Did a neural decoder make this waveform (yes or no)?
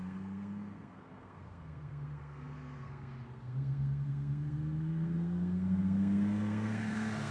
yes